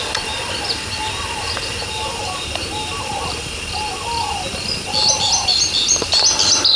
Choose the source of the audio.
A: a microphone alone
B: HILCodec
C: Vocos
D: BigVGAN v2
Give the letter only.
A